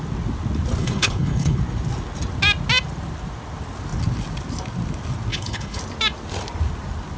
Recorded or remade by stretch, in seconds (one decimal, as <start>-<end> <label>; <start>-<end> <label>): 0.0-0.8 recorded; 0.8-1.6 remade; 1.6-5.3 recorded; 5.3-5.8 remade; 5.8-7.2 recorded